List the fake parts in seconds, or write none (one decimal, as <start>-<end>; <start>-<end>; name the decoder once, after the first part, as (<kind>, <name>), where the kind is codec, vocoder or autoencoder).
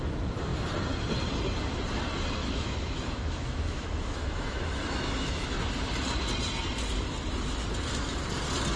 2.4-5.7 (autoencoder, DAC-VAE)